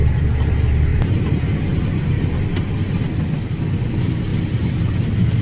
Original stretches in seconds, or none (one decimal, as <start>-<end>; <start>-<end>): 0.0-5.4